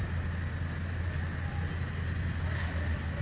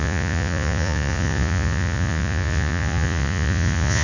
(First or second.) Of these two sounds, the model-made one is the second